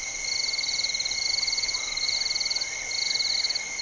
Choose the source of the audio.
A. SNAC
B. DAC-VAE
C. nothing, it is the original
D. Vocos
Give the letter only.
C